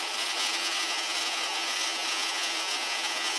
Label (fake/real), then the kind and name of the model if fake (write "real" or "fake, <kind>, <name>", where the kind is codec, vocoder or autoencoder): fake, vocoder, Vocos